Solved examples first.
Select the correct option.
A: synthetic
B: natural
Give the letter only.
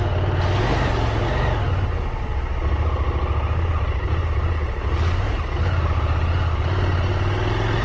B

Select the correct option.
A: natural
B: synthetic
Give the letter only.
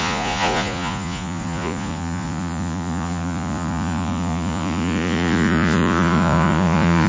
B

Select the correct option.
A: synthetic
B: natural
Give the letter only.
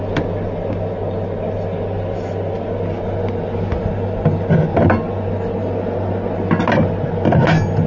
B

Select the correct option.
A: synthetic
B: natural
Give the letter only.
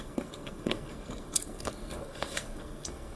A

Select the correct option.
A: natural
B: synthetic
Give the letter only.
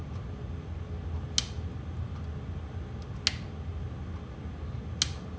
A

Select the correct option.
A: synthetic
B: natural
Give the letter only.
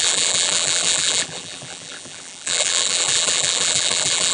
A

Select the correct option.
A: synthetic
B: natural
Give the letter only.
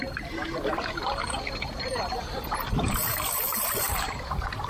A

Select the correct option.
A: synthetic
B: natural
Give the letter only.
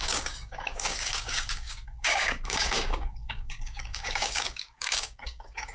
A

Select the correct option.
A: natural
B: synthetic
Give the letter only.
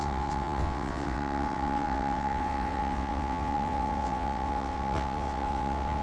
B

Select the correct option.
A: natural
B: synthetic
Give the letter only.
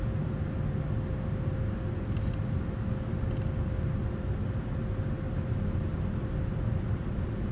A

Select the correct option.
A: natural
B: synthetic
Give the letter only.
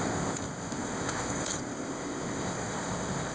B